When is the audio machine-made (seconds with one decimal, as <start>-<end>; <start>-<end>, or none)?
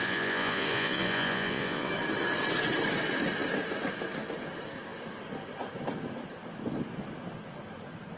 0.0-1.9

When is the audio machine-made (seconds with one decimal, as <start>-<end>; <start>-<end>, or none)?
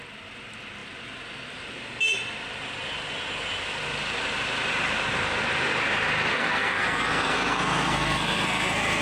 6.3-9.0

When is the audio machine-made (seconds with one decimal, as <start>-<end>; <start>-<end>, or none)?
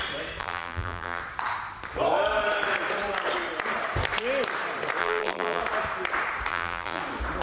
0.4-1.2; 5.0-5.6; 6.5-7.0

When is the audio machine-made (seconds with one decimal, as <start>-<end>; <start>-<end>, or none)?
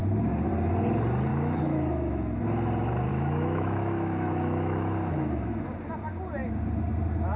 1.3-2.4; 3.1-5.6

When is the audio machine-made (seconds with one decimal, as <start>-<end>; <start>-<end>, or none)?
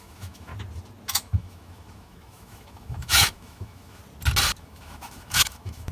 0.0-0.5; 1.1-4.0; 4.6-5.9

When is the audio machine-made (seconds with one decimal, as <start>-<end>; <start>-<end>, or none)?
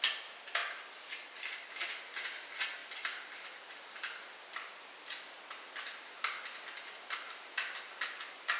0.6-1.7; 2.8-6.4